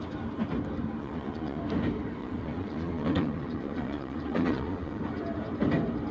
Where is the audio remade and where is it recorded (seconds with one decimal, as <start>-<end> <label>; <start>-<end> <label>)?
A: 0.0-1.0 recorded; 1.0-1.6 remade; 1.6-2.2 recorded; 2.2-5.0 remade; 5.0-6.1 recorded